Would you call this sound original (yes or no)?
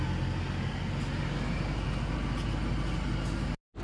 yes